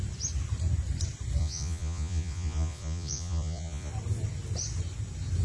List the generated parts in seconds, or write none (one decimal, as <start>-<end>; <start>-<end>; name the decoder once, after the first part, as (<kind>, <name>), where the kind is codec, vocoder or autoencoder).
1.4-3.9 (vocoder, Vocos)